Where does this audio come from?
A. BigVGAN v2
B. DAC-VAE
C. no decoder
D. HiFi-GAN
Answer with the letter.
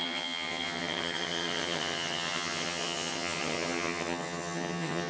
D